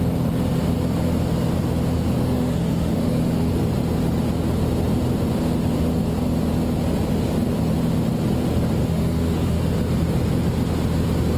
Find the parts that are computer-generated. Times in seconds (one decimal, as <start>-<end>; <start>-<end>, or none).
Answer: 2.2-3.5; 8.8-9.6